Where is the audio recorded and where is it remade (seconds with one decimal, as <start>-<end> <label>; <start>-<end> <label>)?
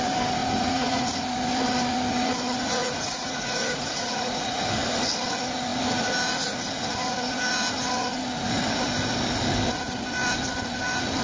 0.0-0.4 recorded; 0.4-1.0 remade; 1.0-2.8 recorded; 2.8-4.6 remade; 4.6-11.2 recorded